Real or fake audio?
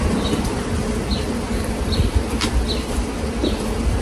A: real